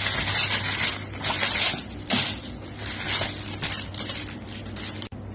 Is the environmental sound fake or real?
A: real